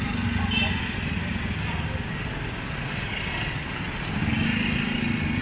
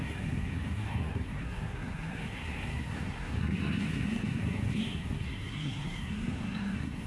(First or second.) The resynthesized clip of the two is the second